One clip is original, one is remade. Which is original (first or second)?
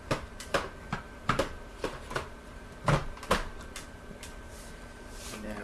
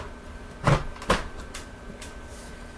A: second